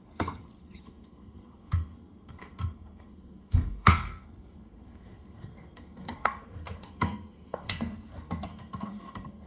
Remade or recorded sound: remade